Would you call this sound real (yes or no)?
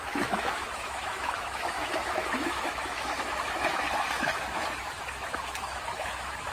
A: no